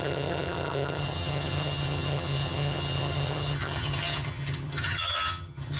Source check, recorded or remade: remade